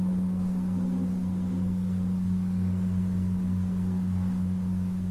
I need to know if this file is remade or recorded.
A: remade